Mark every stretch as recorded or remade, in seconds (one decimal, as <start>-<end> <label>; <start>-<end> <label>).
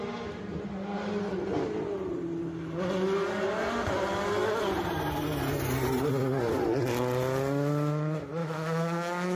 0.0-8.4 recorded; 8.4-9.4 remade